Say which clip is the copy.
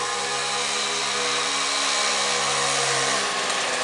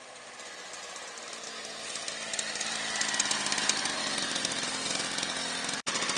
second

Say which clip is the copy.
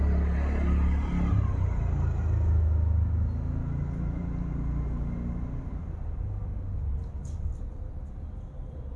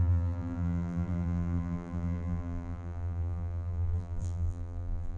second